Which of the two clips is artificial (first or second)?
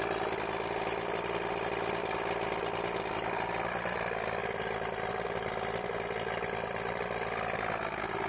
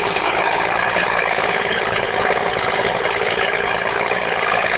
second